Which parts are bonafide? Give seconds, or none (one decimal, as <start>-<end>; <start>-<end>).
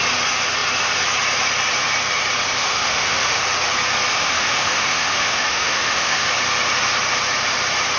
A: 0.0-2.6; 3.4-4.1; 6.3-8.0